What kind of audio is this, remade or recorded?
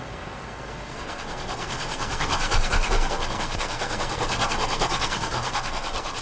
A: remade